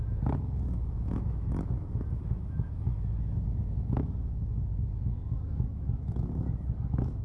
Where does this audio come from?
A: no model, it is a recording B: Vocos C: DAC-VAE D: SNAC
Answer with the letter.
C